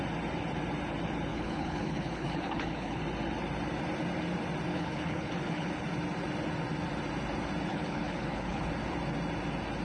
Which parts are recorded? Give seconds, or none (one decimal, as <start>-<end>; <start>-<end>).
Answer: 0.0-1.3; 3.0-4.7; 5.7-7.7; 8.6-9.8